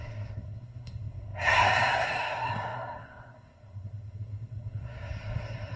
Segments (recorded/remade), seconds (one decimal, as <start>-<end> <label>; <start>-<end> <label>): 0.0-5.8 remade